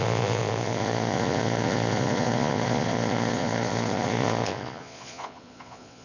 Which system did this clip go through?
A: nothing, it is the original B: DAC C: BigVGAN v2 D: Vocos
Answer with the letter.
D